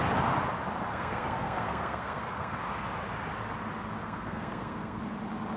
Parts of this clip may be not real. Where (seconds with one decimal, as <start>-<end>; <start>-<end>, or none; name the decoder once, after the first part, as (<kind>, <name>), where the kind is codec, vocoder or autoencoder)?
0.9-2.6 (codec, SNAC); 4.0-5.0